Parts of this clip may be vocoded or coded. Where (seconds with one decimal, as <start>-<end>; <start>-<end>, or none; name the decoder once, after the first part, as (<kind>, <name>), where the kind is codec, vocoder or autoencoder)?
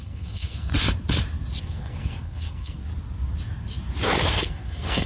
0.0-0.7 (codec, SNAC); 1.6-2.8; 4.3-5.1